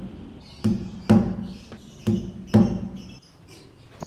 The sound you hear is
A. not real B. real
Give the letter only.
B